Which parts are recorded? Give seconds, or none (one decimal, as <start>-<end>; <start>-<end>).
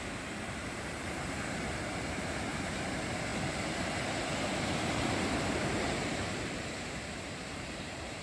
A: 3.3-5.4